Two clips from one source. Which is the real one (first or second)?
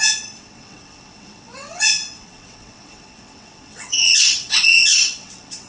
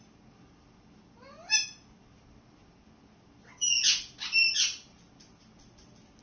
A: second